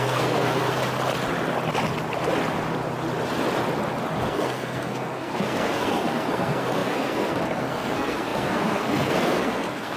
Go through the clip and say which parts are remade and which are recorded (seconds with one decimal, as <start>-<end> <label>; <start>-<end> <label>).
0.0-0.8 remade; 0.8-4.2 recorded; 4.2-10.0 remade